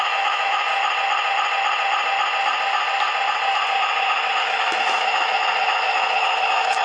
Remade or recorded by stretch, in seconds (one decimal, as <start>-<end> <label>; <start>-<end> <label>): 0.0-0.7 remade; 0.7-4.4 recorded; 4.4-6.8 remade